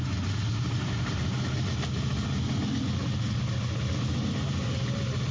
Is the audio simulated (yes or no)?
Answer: no